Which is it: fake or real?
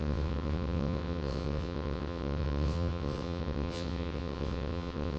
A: fake